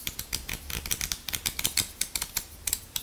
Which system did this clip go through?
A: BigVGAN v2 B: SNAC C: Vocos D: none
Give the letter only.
A